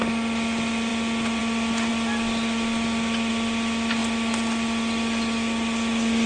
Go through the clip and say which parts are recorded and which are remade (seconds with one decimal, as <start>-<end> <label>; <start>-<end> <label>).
0.0-6.3 recorded